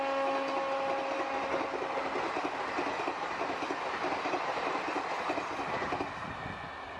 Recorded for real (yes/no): yes